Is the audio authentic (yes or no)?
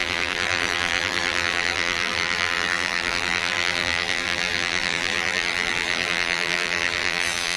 no